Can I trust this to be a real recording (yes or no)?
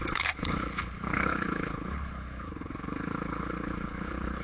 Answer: no